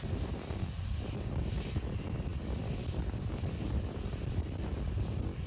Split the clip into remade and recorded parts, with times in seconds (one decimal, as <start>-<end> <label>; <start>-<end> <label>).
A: 0.0-5.5 recorded